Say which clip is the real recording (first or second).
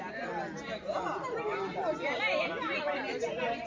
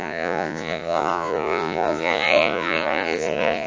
first